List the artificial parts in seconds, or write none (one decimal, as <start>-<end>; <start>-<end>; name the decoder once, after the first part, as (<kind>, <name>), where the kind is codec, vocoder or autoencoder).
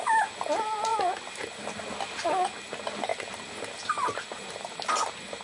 none